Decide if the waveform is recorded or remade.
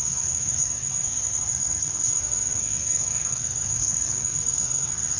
remade